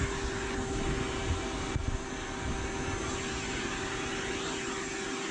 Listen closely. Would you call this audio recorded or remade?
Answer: recorded